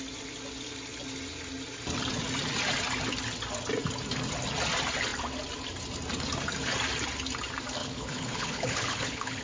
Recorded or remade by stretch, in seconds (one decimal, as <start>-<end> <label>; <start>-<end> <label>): 0.0-7.8 recorded; 7.8-9.4 remade